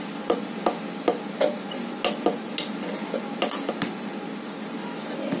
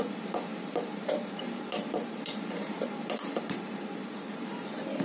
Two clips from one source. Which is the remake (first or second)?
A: second